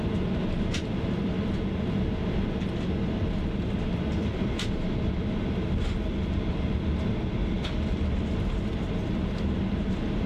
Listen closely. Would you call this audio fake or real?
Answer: real